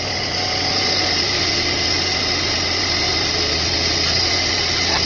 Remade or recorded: recorded